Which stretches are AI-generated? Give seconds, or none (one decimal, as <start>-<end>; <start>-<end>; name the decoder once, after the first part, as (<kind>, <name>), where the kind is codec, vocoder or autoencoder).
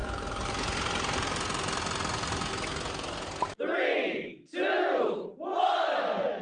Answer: none